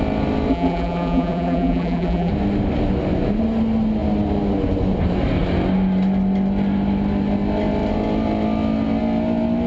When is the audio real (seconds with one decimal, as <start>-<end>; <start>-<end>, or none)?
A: 0.0-0.5; 2.3-9.7